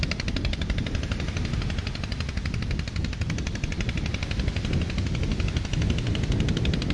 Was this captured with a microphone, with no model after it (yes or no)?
yes